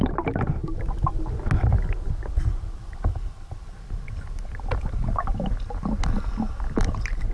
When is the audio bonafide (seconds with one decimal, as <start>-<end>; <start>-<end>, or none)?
0.0-7.3